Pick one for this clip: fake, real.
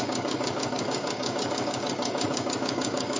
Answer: fake